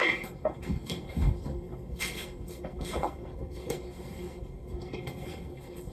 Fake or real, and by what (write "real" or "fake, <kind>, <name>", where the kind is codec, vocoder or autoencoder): fake, codec, SNAC